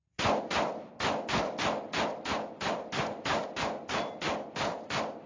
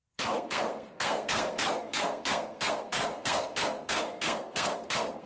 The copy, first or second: second